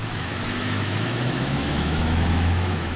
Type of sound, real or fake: fake